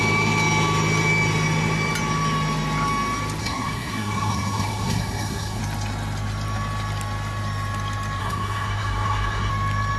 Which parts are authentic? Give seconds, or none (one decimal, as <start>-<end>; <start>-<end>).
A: 0.0-3.4; 5.6-8.2; 9.5-10.0

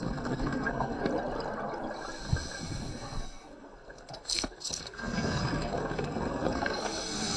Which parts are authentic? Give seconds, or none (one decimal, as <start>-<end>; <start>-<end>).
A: 1.0-2.9

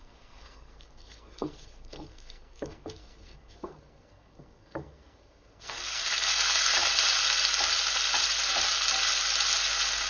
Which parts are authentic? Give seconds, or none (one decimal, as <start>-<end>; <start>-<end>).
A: 6.7-10.1

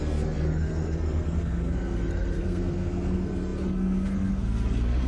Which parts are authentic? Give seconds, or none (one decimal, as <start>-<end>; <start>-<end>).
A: none

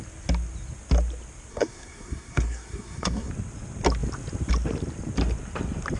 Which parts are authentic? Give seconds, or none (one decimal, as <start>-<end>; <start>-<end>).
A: 0.0-1.5; 3.3-6.0